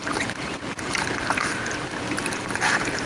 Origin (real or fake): fake